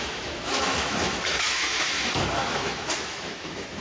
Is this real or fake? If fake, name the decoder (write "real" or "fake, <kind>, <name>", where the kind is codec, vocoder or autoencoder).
fake, autoencoder, DAC-VAE